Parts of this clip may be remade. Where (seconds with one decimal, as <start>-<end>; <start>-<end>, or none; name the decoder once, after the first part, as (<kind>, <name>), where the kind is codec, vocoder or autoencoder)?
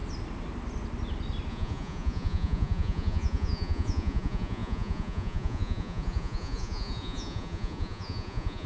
1.5-8.7 (vocoder, Vocos)